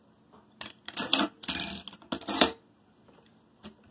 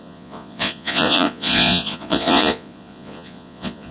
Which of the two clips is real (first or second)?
first